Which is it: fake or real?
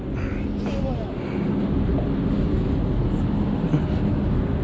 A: real